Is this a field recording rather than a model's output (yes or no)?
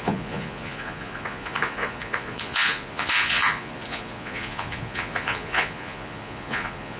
no